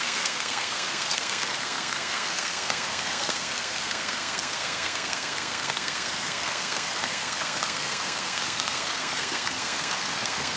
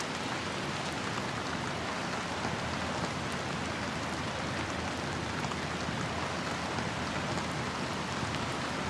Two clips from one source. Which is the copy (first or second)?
first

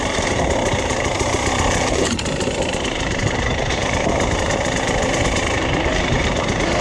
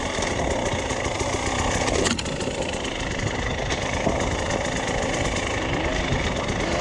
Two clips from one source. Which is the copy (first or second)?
first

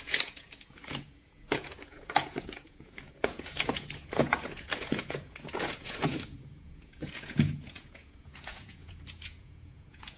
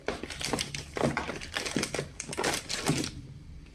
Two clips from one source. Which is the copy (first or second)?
first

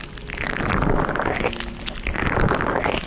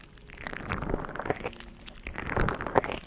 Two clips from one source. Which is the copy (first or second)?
second